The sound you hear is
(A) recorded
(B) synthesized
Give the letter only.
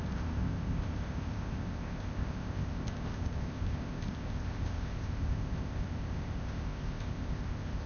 B